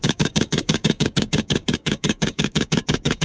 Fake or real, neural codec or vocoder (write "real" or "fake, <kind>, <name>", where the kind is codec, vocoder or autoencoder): fake, codec, DAC